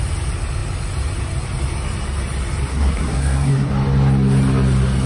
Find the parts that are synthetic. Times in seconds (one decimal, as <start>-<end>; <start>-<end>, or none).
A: 2.7-3.7